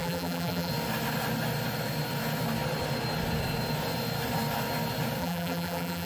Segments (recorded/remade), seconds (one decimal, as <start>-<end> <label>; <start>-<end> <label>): 0.0-0.7 remade; 0.7-5.2 recorded; 5.2-6.1 remade